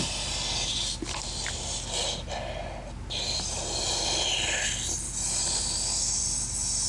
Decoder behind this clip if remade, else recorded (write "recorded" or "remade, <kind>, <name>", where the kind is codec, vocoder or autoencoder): recorded